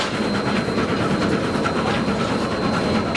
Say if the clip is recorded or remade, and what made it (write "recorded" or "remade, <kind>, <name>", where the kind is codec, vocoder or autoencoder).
recorded